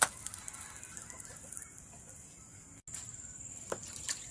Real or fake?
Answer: real